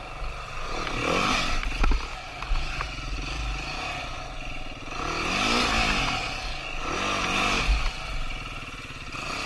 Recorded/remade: recorded